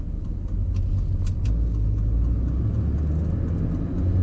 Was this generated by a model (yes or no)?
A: no